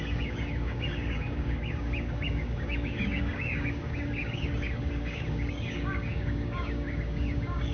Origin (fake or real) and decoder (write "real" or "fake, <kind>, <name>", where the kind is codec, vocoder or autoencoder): fake, codec, DAC